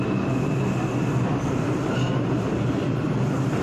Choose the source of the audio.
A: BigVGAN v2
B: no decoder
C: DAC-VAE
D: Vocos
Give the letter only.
B